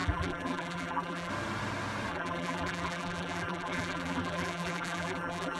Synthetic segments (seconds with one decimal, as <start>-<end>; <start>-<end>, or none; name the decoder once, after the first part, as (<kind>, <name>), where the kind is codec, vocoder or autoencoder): 0.0-1.3 (vocoder, BigVGAN v2); 2.1-5.6